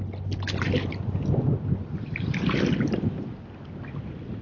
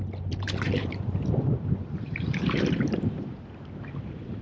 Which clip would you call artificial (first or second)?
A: second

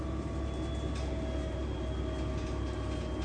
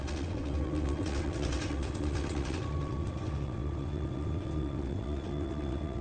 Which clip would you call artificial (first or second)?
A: second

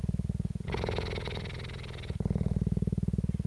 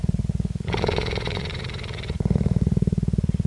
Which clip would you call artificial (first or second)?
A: second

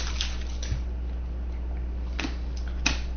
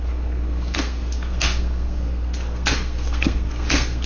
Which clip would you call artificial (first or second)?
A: second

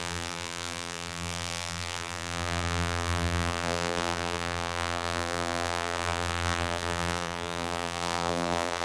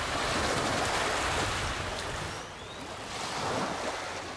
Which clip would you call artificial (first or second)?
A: first